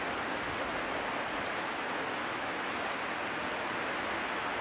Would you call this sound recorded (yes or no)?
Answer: yes